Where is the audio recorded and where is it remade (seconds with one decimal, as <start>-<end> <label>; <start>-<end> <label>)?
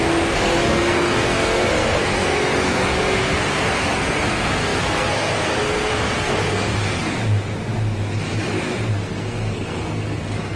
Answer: 0.0-7.1 remade; 7.1-8.9 recorded; 8.9-10.6 remade